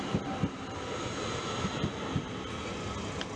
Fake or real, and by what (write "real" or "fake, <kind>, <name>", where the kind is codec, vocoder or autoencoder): real